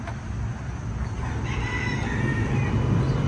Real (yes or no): yes